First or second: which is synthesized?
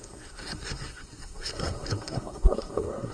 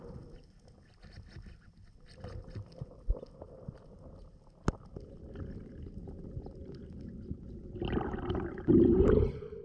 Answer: first